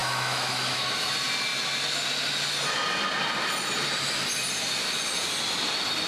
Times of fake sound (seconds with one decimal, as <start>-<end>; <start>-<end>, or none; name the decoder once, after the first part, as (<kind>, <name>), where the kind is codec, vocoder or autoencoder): 0.0-1.1 (autoencoder, DAC-VAE)